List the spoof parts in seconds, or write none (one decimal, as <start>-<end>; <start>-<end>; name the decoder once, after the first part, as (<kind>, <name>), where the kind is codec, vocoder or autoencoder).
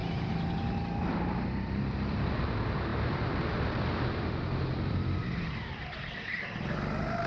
1.1-7.3 (vocoder, BigVGAN v2)